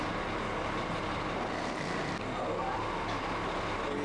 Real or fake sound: real